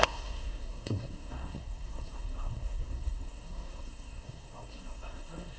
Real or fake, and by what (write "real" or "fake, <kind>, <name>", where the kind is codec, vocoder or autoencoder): fake, codec, SNAC